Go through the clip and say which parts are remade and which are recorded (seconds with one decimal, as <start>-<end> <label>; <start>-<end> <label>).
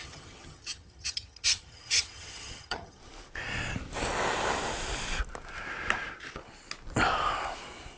0.0-3.0 remade; 3.0-8.0 recorded